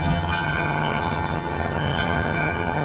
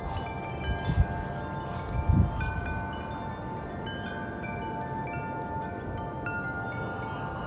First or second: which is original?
second